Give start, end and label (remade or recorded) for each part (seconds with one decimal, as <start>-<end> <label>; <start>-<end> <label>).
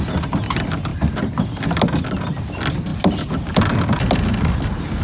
0.0-5.0 recorded